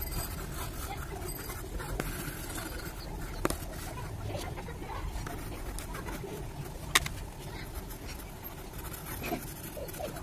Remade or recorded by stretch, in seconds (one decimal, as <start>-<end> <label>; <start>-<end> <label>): 0.0-10.2 recorded

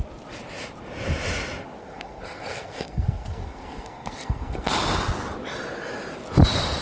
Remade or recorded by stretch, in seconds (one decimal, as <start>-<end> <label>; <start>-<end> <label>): 0.0-1.8 recorded; 1.8-4.7 remade; 4.7-6.8 recorded

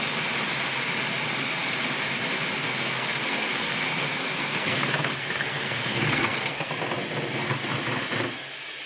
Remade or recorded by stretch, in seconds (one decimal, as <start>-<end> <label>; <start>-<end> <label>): 0.0-2.6 recorded; 2.6-6.7 remade; 6.7-8.9 recorded

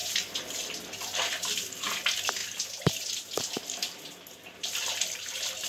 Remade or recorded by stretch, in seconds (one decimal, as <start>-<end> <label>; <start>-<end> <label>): 0.0-5.7 recorded

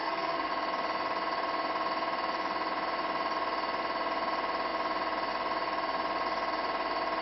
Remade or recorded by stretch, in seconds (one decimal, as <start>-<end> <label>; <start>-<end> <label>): 0.0-0.5 remade; 0.5-7.2 recorded

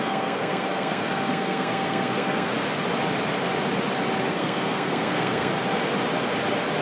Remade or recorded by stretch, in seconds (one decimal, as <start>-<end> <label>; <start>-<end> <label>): 0.0-2.5 remade; 2.5-4.3 recorded; 4.3-5.5 remade; 5.5-6.8 recorded